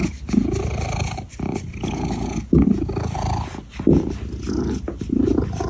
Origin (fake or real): real